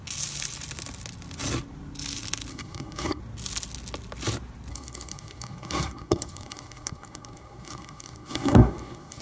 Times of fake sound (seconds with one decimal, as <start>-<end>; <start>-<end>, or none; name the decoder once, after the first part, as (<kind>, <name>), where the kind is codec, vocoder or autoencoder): 2.5-3.2 (codec, SNAC); 4.7-9.2